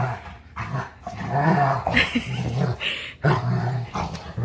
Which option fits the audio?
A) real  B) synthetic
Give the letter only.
A